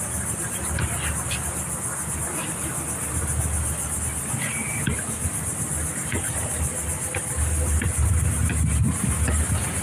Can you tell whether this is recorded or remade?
recorded